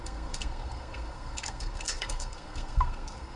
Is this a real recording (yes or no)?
no